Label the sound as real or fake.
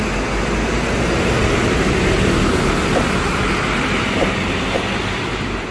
real